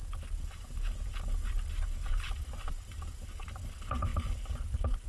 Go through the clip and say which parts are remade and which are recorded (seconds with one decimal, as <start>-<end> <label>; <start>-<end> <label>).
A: 0.0-5.1 recorded